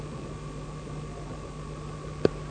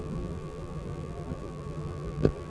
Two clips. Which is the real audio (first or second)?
first